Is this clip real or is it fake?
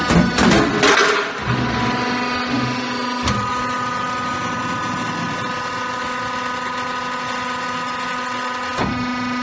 real